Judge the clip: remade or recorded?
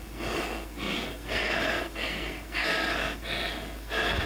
remade